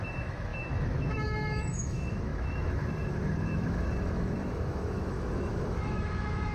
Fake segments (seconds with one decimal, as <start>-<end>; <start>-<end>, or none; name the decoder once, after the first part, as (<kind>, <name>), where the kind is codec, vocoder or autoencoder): 0.0-6.5 (autoencoder, DAC-VAE)